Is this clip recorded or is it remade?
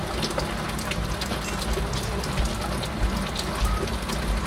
recorded